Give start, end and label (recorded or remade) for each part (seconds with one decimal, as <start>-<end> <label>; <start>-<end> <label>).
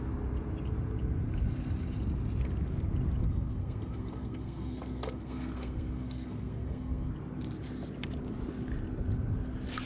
0.0-3.2 recorded; 3.2-7.1 remade; 7.1-9.9 recorded